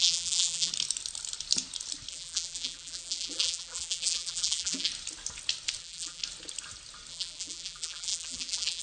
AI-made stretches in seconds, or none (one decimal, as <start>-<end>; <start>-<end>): 0.0-0.7; 2.1-4.9; 5.8-6.2; 7.1-8.8